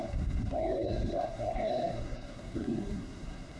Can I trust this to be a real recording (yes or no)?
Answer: no